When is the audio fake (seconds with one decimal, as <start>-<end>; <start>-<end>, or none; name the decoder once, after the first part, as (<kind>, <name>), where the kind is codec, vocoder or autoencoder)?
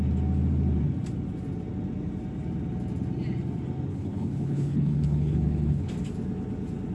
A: 3.9-5.9 (codec, HILCodec)